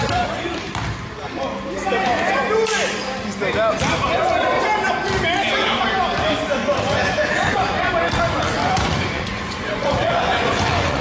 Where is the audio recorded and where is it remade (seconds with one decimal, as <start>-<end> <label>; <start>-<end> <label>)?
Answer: 0.0-6.6 recorded; 6.6-7.9 remade; 7.9-8.6 recorded; 8.6-11.0 remade